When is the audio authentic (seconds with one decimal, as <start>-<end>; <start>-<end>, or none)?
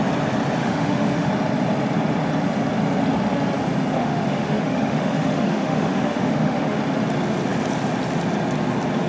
0.0-0.6; 1.3-4.0; 6.8-9.1